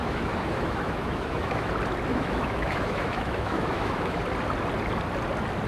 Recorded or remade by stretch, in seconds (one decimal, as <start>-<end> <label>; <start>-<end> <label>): 0.0-1.7 remade; 1.7-2.1 recorded; 2.1-4.2 remade; 4.2-5.7 recorded